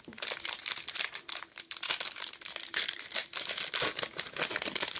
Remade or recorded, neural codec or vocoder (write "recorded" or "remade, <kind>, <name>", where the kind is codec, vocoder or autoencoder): recorded